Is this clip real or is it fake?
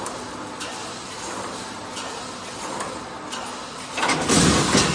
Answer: real